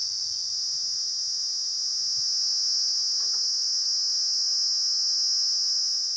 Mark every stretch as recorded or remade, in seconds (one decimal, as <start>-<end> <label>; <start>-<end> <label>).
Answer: 0.0-0.5 remade; 0.5-6.2 recorded